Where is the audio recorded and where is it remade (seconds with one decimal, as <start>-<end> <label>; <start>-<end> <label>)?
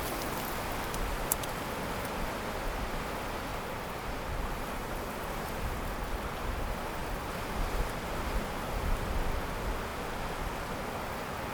0.0-11.5 recorded